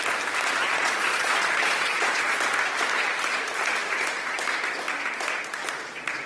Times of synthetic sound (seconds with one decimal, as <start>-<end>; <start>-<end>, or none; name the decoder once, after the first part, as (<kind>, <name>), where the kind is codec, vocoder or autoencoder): 0.6-2.4 (vocoder, Vocos)